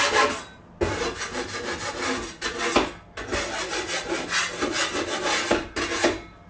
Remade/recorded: recorded